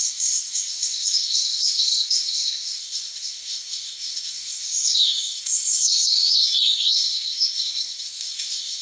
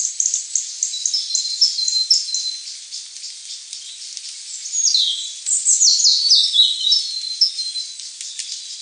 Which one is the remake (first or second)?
first